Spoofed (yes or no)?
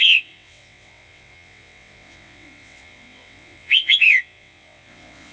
yes